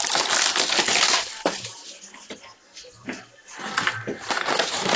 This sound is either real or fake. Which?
real